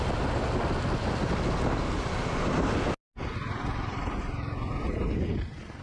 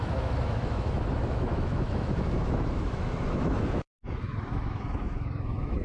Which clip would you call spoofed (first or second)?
second